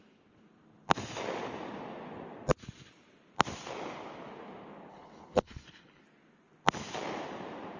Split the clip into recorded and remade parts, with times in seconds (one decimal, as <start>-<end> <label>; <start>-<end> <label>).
0.0-4.9 recorded; 4.9-6.0 remade; 6.0-7.8 recorded